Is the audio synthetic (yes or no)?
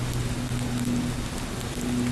no